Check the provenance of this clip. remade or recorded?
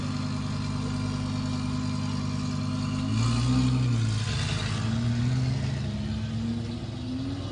recorded